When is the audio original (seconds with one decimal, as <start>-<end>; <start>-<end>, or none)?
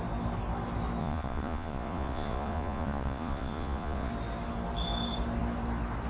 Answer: 0.0-1.0; 4.1-6.1